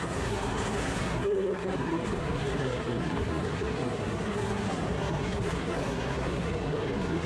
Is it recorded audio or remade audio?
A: remade